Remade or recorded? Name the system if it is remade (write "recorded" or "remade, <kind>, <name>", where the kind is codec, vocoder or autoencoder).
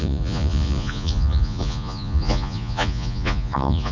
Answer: remade, vocoder, Vocos